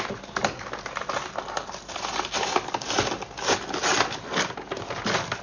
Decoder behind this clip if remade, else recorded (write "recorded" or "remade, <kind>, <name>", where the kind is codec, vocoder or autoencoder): recorded